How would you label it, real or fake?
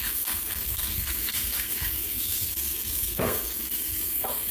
fake